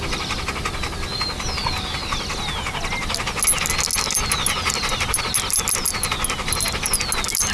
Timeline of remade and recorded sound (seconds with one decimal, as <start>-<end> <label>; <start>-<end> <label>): 0.0-7.5 recorded